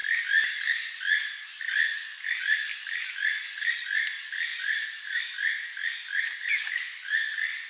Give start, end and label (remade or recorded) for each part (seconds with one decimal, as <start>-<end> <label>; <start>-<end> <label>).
0.0-7.7 recorded